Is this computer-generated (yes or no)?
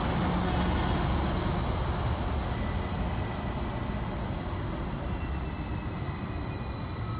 no